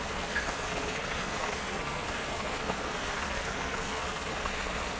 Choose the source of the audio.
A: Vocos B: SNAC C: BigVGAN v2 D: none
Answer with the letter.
B